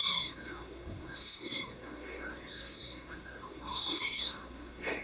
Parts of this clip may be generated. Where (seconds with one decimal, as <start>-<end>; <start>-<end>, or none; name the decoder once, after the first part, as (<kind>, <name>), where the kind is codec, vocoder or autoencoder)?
0.0-5.0 (codec, SNAC)